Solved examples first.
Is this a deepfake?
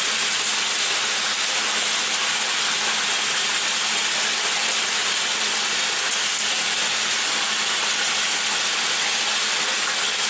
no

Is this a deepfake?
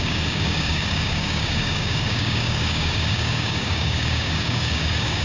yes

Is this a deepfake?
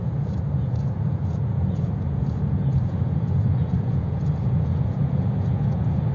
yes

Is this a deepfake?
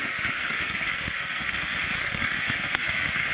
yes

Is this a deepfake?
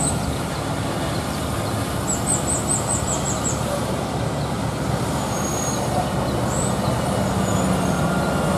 no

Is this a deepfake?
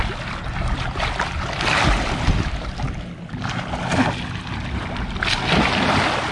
no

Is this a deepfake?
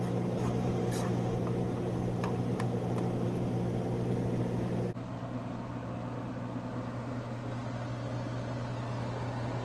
no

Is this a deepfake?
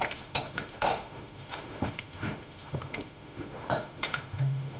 yes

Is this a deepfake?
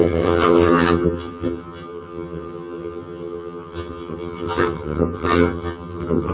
yes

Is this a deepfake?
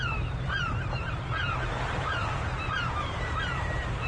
yes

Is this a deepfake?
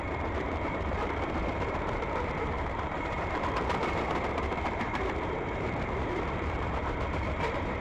yes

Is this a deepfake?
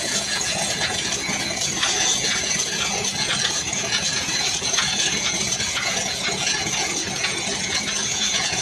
yes